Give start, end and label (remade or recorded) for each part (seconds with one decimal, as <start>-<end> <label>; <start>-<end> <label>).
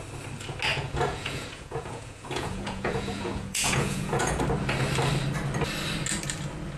0.0-0.7 recorded; 0.7-4.4 remade; 4.4-6.8 recorded